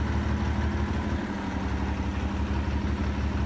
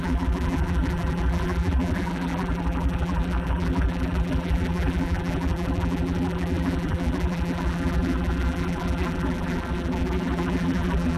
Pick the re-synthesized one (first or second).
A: second